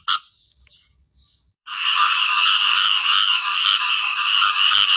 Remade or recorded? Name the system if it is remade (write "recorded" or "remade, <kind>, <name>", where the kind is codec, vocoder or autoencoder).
remade, codec, DAC